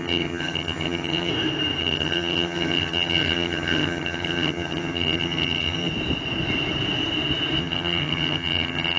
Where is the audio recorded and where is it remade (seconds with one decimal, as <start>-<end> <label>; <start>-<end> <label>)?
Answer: 0.0-1.3 remade; 1.3-1.8 recorded; 1.8-5.9 remade; 5.9-7.6 recorded; 7.6-9.0 remade

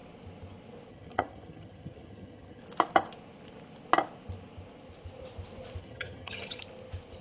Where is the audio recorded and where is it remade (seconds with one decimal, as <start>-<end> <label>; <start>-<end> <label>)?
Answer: 0.0-0.9 recorded; 0.9-2.6 remade; 2.6-5.8 recorded; 5.8-6.6 remade; 6.6-7.2 recorded

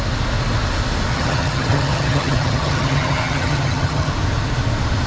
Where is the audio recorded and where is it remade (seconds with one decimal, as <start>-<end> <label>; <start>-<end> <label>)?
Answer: 0.0-1.1 recorded; 1.1-4.1 remade; 4.1-5.1 recorded